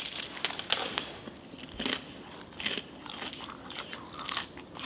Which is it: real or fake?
real